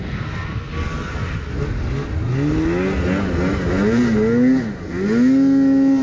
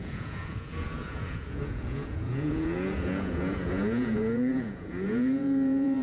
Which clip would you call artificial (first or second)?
second